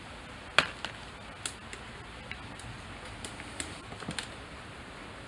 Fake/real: real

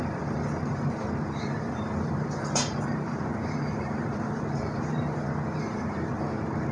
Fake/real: fake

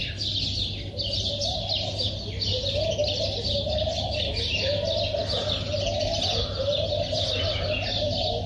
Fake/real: real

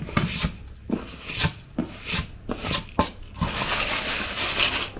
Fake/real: real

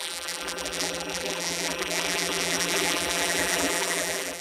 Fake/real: fake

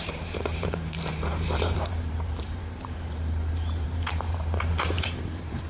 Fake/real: fake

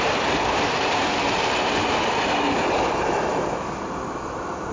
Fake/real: real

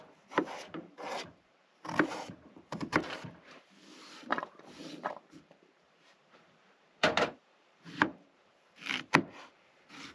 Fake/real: fake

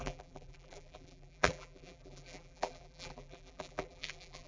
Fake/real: fake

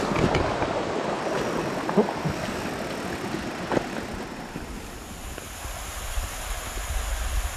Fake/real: real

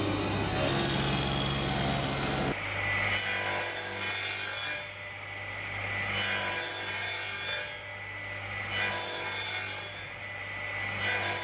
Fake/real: real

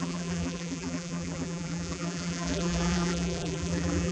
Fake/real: fake